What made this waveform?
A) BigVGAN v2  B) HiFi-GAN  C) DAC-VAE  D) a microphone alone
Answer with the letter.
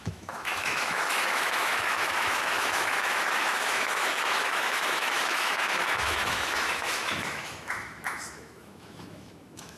C